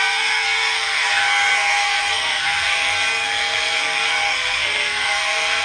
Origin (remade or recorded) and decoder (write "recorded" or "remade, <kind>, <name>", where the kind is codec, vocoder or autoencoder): remade, codec, SNAC